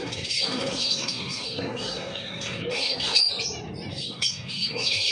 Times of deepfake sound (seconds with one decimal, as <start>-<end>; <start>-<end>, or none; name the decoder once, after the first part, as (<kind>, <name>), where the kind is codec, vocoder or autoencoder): 0.0-3.2 (codec, SNAC); 3.9-5.1